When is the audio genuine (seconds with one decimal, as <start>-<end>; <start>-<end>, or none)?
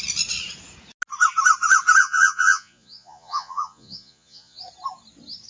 0.0-2.0; 4.6-5.5